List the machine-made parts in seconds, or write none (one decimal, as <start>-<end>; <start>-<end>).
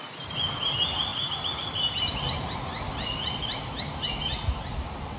none